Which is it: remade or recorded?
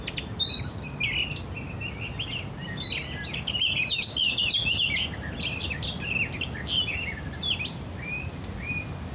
recorded